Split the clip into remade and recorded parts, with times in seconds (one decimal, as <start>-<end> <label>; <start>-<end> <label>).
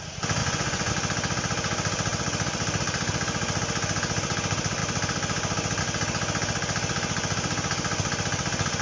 0.0-0.4 recorded; 0.4-0.9 remade; 0.9-8.8 recorded